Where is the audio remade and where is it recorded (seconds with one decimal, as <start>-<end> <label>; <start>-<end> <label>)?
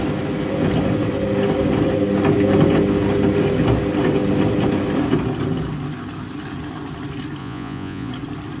0.0-7.4 recorded; 7.4-8.1 remade; 8.1-8.6 recorded